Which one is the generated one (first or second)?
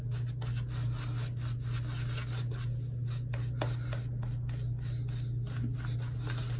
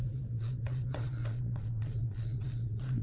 second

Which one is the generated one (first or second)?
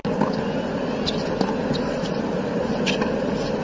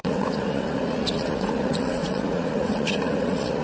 second